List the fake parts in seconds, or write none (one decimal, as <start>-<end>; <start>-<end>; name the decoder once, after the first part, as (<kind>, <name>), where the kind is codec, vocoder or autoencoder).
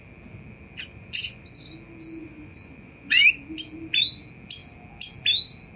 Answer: 0.9-1.5 (vocoder, Vocos); 2.2-3.3